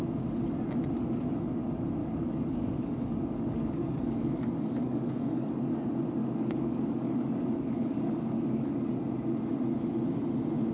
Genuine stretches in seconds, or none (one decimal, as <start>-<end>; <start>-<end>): 0.0-2.0; 5.5-6.2; 8.7-10.7